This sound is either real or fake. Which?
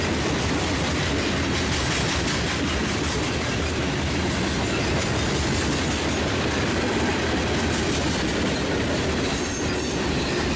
real